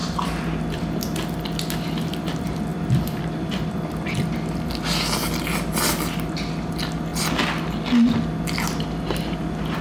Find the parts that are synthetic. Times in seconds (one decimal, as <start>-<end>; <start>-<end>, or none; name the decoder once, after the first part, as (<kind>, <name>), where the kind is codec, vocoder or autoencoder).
0.0-0.8 (vocoder, BigVGAN v2); 2.7-4.2